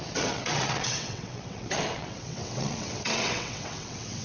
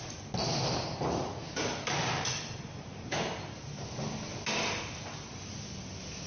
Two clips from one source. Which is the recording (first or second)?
second